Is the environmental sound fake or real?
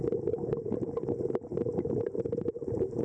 real